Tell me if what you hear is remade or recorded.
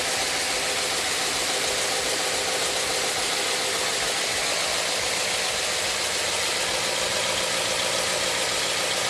recorded